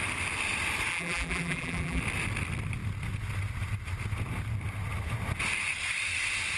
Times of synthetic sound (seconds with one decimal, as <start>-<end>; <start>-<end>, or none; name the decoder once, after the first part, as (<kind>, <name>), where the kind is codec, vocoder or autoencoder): 0.9-2.0 (vocoder, BigVGAN v2)